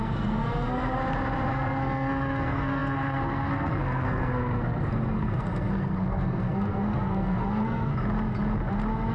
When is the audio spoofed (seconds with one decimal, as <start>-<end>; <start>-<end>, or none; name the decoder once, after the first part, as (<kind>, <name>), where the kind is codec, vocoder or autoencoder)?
0.0-1.0 (codec, SNAC); 1.5-7.9